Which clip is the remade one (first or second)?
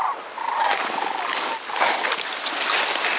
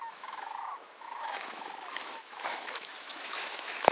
second